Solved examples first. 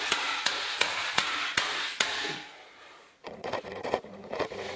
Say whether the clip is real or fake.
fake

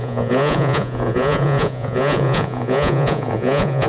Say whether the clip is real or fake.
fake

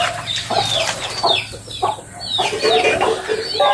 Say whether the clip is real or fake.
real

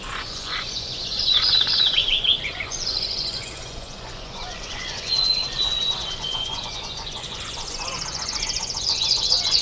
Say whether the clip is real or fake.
fake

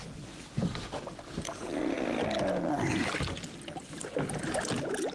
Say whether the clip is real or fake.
real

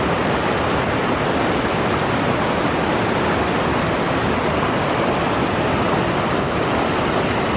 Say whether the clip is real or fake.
real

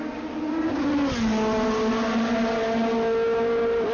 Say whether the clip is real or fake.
real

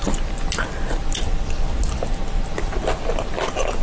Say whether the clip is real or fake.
real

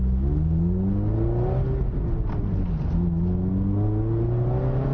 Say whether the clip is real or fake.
real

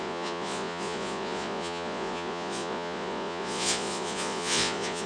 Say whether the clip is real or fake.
fake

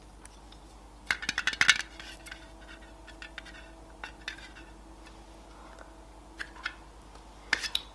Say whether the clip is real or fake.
real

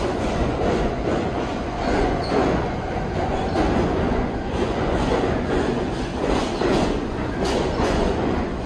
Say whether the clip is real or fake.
fake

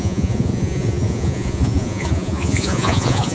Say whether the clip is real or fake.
fake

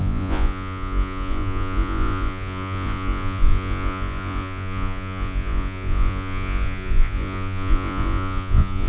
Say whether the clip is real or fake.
fake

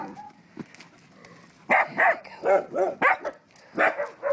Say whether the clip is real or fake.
real